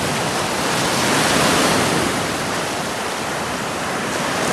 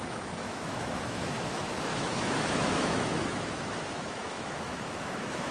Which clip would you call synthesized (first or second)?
second